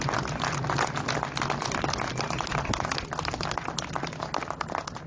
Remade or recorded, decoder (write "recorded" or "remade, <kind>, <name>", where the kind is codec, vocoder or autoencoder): recorded